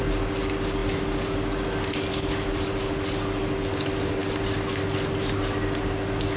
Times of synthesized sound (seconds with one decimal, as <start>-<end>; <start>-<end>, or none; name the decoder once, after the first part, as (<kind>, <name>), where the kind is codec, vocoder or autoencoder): none